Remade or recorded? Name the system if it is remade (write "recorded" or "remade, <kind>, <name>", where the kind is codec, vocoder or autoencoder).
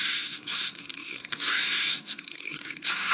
remade, codec, SNAC